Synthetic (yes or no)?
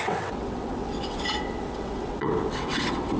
yes